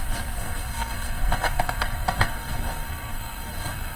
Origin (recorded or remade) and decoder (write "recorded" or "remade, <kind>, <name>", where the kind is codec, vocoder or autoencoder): remade, codec, SNAC